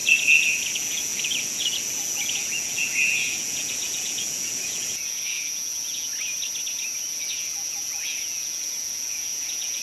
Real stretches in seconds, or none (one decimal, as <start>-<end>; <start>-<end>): 0.0-0.6; 6.1-7.1